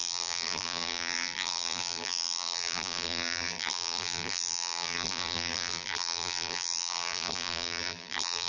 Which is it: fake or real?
fake